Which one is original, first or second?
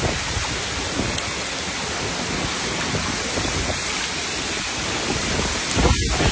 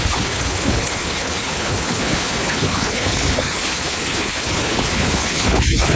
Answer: first